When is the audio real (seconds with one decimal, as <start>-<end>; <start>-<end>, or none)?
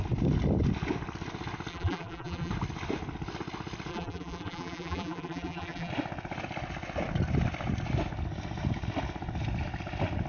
0.0-1.7; 2.5-3.9; 5.9-10.3